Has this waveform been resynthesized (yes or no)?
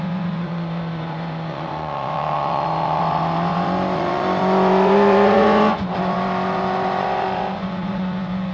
yes